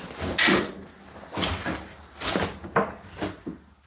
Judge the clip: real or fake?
real